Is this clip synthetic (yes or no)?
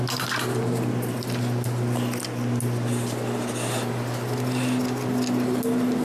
no